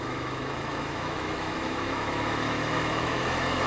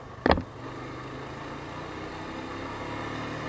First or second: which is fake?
first